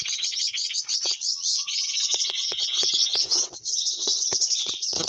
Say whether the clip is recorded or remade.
remade